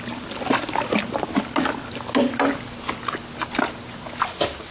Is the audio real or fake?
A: real